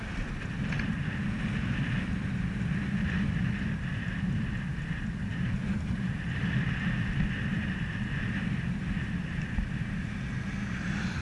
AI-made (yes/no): no